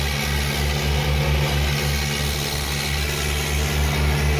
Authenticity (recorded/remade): recorded